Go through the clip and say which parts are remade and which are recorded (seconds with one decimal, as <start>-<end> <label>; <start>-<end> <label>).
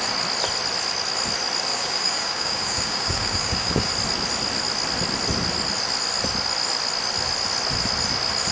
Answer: 0.0-1.7 recorded; 1.7-3.9 remade; 3.9-8.5 recorded